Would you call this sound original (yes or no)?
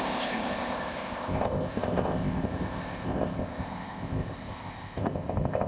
no